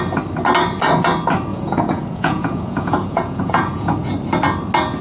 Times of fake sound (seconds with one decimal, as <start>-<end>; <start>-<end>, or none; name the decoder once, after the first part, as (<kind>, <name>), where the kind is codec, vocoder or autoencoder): 1.5-4.1 (vocoder, Vocos)